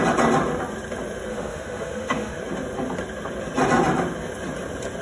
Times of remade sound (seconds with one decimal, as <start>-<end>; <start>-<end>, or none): 1.3-2.4